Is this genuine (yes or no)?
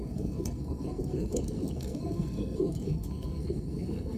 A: no